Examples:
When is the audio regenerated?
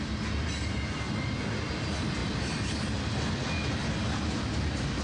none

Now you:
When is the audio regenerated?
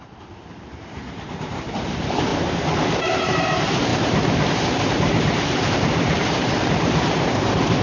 0.0-2.3 (vocoder, BigVGAN v2); 3.0-7.8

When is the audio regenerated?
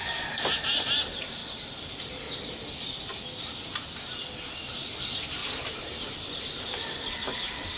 none